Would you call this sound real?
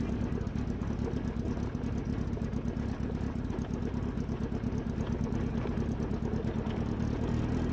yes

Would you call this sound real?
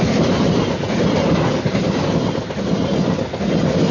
yes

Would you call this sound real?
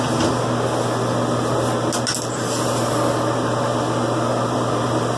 yes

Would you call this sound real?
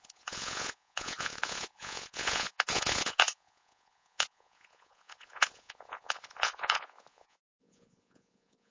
no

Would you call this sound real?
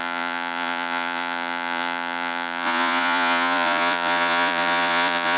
no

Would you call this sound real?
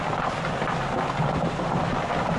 yes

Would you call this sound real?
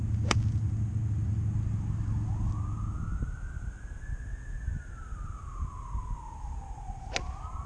yes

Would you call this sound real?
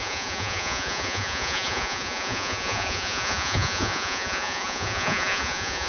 no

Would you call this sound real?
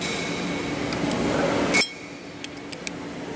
yes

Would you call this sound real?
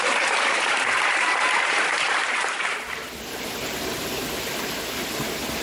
yes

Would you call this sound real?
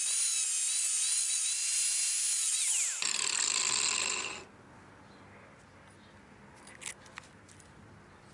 yes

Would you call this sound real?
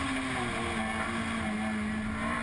yes